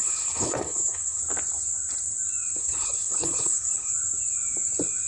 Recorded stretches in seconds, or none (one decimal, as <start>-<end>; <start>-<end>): 1.2-2.6; 3.9-5.1